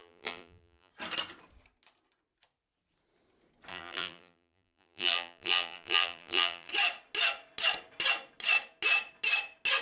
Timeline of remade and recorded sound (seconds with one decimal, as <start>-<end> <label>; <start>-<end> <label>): 0.0-0.9 remade; 0.9-3.7 recorded; 3.7-6.7 remade; 6.7-9.8 recorded